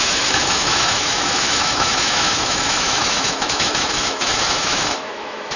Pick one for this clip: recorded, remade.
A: remade